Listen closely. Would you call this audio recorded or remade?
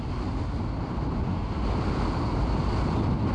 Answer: recorded